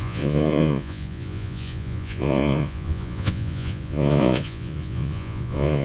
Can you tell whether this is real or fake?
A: fake